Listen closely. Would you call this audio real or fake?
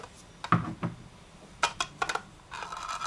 real